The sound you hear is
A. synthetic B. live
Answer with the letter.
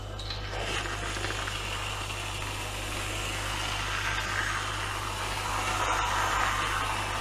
B